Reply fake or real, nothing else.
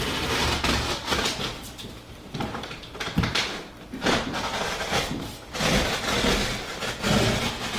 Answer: real